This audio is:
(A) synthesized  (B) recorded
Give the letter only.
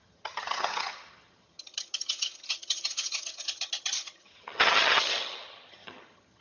A